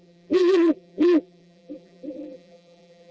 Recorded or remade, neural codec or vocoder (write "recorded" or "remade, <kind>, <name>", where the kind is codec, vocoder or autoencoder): remade, vocoder, BigVGAN v2